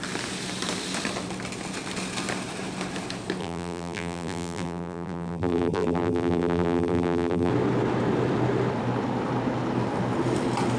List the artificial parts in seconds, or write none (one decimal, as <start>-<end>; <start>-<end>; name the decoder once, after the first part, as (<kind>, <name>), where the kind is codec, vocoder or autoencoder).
3.4-7.5 (vocoder, BigVGAN v2)